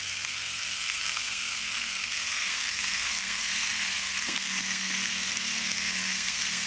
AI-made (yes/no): yes